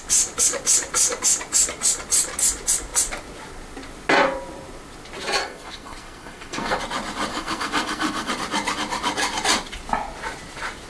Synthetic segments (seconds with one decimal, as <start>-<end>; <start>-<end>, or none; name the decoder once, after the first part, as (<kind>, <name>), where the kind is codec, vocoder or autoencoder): 5.4-6.8 (codec, SNAC); 7.3-8.3